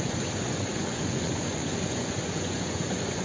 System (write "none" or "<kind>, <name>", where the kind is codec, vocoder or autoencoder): vocoder, Vocos